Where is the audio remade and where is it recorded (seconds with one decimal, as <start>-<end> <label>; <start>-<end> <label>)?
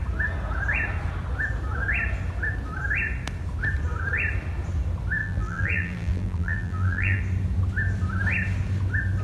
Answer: 0.0-5.2 recorded; 5.2-7.2 remade; 7.2-9.2 recorded